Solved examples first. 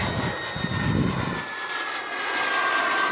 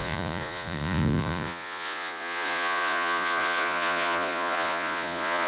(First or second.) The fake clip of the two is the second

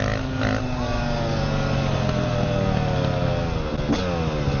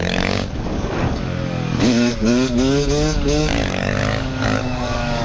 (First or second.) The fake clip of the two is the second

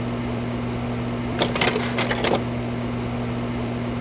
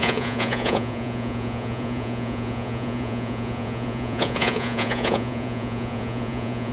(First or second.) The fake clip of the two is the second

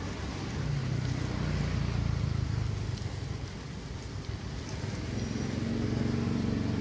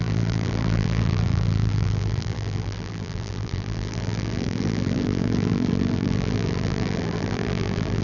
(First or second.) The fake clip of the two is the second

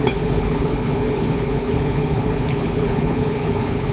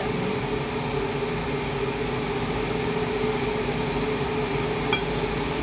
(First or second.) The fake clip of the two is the first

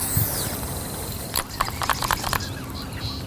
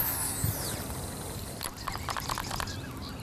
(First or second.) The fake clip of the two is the first